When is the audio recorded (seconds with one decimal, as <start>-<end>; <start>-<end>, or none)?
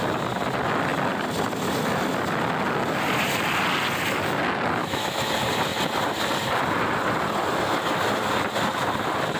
0.0-4.8; 5.3-9.4